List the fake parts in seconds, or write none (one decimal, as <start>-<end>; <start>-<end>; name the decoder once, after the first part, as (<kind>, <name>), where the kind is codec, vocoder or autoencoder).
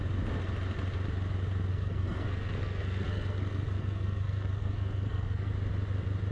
1.7-5.5 (codec, SNAC)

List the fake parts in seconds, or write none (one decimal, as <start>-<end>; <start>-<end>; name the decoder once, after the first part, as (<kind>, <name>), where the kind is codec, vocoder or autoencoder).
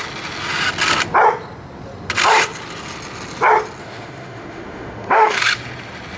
3.8-5.4 (autoencoder, DAC-VAE)